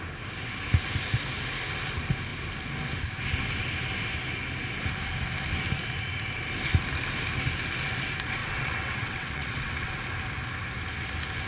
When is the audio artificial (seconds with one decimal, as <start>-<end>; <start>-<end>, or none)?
8.4-9.9